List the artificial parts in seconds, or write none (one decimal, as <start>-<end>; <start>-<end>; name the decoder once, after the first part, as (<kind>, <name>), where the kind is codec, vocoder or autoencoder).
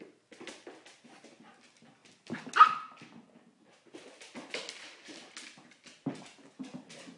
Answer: none